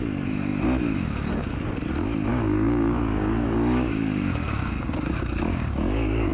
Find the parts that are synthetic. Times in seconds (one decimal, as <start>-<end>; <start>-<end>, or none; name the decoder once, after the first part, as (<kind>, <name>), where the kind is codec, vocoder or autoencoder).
2.3-6.3 (codec, DAC)